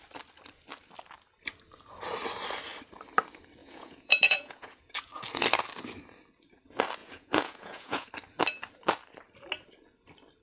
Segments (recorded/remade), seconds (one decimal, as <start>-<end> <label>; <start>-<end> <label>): 0.0-3.6 recorded; 3.6-5.1 remade; 5.1-7.0 recorded; 7.0-8.1 remade; 8.1-10.4 recorded